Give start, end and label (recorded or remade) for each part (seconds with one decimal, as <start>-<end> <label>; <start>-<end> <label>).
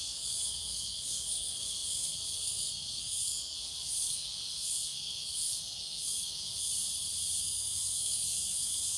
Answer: 0.0-6.7 remade; 6.7-7.4 recorded; 7.4-9.0 remade